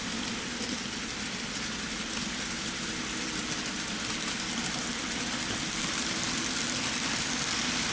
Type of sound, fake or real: real